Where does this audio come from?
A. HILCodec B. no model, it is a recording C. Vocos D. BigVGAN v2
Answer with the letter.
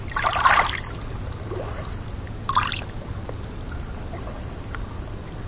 B